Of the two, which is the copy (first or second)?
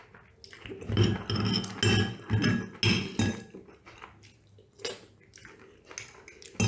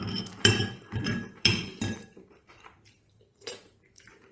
second